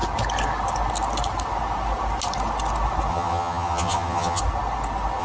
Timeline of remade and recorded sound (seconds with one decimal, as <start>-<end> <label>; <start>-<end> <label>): 0.0-3.1 recorded; 3.1-4.4 remade; 4.4-5.2 recorded